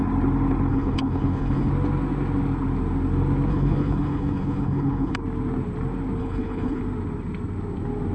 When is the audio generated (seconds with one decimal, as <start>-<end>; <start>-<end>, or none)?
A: 0.7-1.7; 3.5-5.2; 6.2-6.8